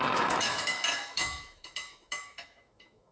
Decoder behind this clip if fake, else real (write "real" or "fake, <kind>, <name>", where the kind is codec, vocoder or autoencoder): fake, autoencoder, DAC-VAE